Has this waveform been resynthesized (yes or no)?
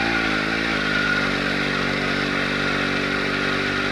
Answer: no